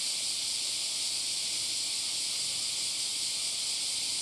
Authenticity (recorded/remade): recorded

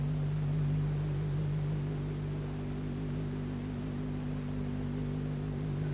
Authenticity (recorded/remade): recorded